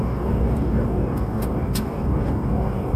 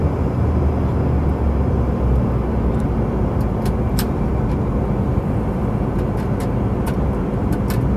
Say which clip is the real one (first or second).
second